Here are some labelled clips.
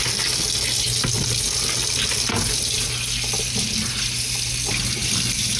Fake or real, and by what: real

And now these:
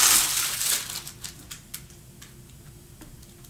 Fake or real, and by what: real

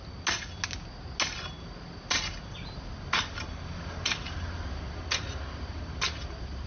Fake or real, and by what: real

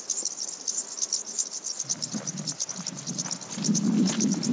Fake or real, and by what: real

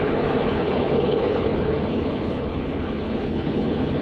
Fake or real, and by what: fake, codec, HILCodec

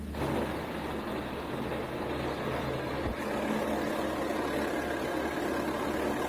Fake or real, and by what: real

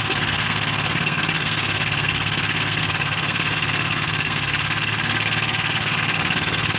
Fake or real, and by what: fake, codec, SNAC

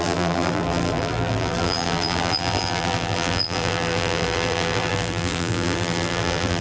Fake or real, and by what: fake, vocoder, BigVGAN v2